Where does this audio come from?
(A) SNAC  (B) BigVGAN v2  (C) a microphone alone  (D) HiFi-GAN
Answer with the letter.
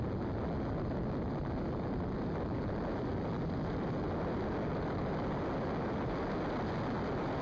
C